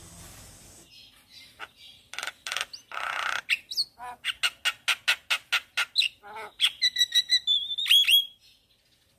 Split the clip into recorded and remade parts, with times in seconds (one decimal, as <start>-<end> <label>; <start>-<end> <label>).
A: 0.0-9.2 recorded